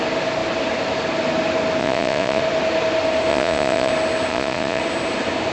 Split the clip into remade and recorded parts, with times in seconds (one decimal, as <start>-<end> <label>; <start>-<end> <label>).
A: 0.0-1.8 recorded; 1.8-2.4 remade; 2.4-3.3 recorded; 3.3-3.9 remade; 3.9-4.3 recorded; 4.3-4.8 remade; 4.8-5.5 recorded